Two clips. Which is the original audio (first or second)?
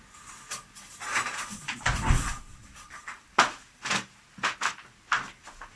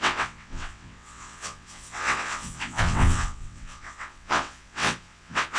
first